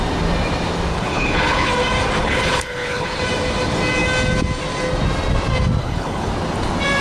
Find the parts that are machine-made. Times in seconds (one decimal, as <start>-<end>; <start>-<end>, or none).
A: 0.9-1.7; 2.2-3.2; 5.8-6.3